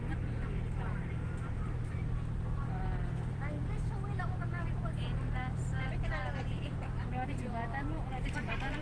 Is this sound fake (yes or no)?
yes